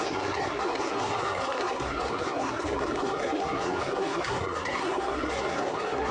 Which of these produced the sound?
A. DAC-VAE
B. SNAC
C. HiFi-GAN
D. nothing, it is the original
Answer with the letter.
B